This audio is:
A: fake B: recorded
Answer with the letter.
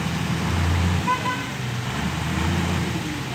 A